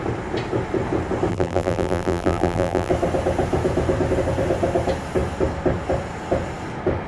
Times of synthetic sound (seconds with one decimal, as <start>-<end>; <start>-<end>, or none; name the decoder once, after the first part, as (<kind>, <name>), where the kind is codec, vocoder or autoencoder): 1.3-2.9 (vocoder, BigVGAN v2)